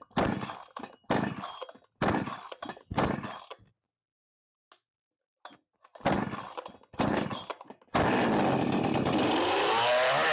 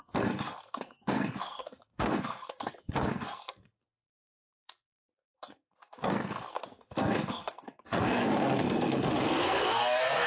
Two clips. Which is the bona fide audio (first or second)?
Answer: first